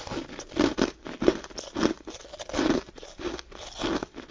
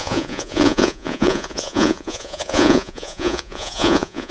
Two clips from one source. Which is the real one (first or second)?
first